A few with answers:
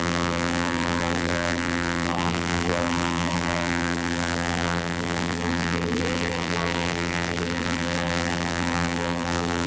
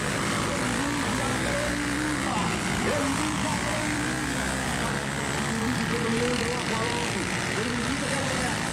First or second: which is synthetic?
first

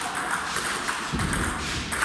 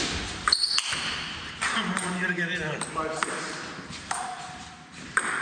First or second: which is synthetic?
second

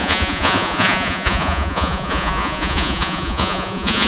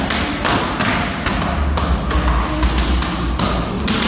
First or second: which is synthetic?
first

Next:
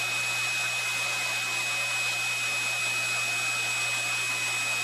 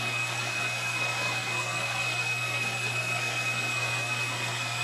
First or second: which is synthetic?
second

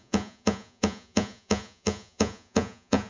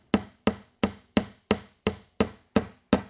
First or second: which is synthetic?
first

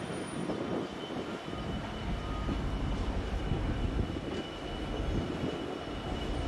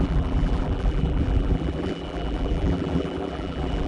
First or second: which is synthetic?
second